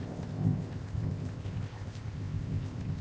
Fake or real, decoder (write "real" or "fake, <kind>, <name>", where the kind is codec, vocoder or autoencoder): fake, codec, ZipCodec